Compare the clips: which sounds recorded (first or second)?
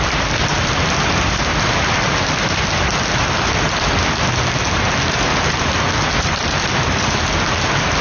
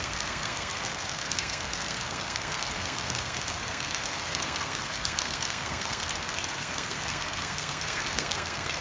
first